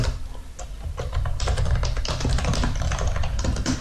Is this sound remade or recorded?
recorded